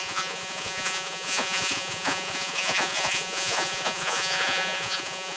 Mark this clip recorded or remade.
remade